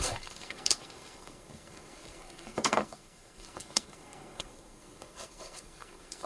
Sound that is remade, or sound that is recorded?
remade